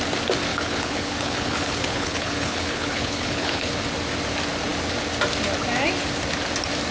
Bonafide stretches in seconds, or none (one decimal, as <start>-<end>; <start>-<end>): 0.0-0.5; 3.7-6.9